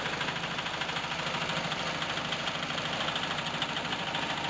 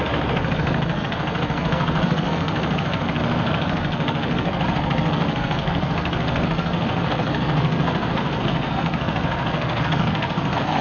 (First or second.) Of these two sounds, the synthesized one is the second